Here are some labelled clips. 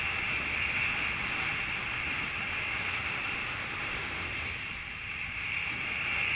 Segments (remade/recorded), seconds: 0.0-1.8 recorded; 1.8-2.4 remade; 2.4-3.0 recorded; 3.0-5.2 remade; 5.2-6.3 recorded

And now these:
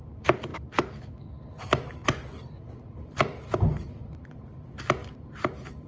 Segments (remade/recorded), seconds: 0.0-5.9 recorded

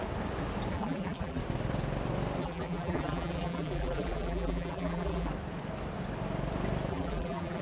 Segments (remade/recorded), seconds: 0.0-0.7 recorded; 0.7-1.4 remade; 1.4-2.4 recorded; 2.4-5.3 remade; 5.3-6.9 recorded; 6.9-7.6 remade

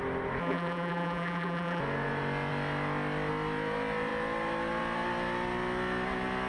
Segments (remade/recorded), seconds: 0.0-0.4 recorded; 0.4-1.8 remade; 1.8-6.5 recorded

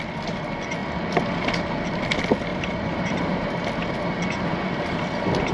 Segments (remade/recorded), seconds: 0.0-2.5 recorded; 2.5-3.7 remade; 3.7-5.5 recorded